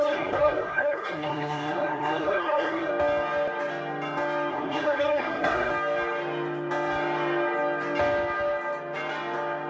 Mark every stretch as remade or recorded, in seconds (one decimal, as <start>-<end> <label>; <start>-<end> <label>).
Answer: 0.0-2.9 remade; 2.9-4.5 recorded; 4.5-5.7 remade; 5.7-9.7 recorded